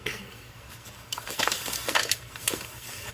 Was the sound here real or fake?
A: fake